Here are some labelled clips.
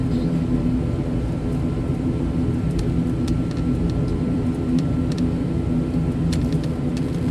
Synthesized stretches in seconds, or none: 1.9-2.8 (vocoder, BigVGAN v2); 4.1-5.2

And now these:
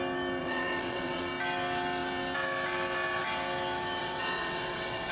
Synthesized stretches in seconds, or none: 0.4-1.3 (vocoder, WaveNeXt); 4.0-5.1

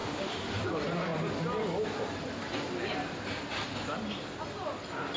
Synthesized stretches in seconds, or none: 0.0-0.6 (autoencoder, DAC-VAE)

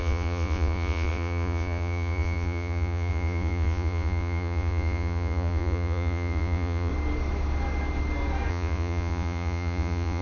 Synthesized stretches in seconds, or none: 0.0-6.9 (vocoder, Vocos); 8.5-10.2

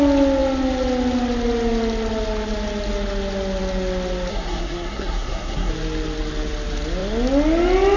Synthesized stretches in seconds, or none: 4.3-5.7 (codec, SNAC)

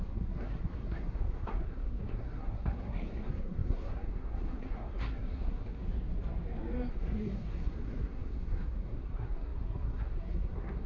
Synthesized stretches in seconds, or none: 0.0-5.8 (codec, SNAC); 6.9-10.9